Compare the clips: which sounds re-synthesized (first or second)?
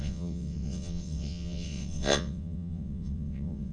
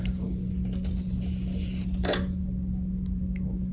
first